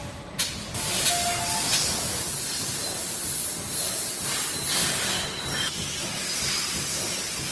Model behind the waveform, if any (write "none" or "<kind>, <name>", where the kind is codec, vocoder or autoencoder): none